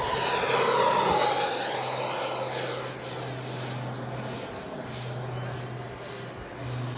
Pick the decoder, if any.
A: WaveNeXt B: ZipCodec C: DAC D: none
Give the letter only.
D